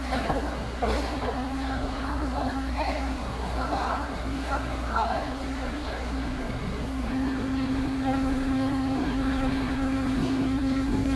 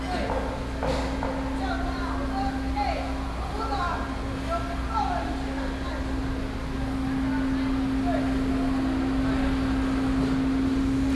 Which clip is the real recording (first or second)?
second